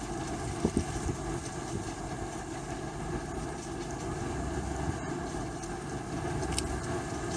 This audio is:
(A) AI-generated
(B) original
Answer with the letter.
B